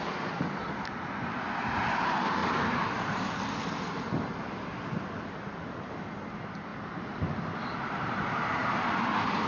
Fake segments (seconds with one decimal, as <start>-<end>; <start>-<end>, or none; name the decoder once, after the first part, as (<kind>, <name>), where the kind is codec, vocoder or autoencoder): 2.4-4.0 (vocoder, BigVGAN v2); 6.7-8.9